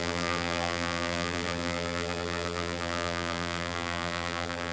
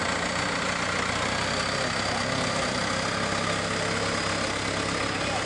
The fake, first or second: first